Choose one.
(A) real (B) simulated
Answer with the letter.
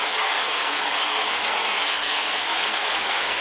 B